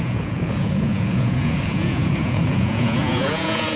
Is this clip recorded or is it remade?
remade